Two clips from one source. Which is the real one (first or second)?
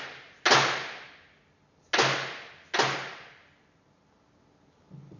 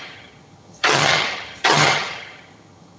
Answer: first